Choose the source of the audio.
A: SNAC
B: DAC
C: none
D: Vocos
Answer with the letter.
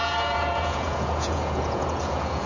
D